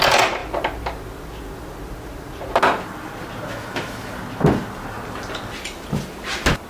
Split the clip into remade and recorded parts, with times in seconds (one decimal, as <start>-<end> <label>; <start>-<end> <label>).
0.0-3.5 recorded; 3.5-4.1 remade; 4.1-6.7 recorded